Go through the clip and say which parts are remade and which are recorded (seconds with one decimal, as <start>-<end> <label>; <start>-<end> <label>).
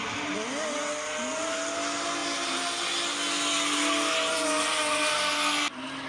0.0-6.1 recorded